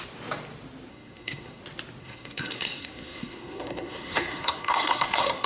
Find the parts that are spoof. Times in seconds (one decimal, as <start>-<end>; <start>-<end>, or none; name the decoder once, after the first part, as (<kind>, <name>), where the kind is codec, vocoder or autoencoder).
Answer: 0.9-1.6 (codec, SNAC); 2.0-5.5